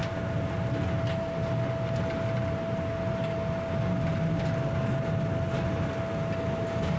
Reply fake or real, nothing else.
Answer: real